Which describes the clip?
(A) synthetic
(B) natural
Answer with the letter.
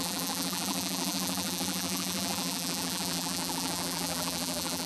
A